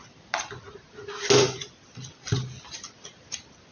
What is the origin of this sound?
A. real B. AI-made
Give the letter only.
A